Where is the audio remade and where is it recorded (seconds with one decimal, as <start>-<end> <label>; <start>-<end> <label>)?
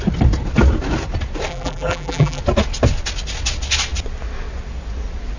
0.0-1.5 recorded; 1.5-2.4 remade; 2.4-5.4 recorded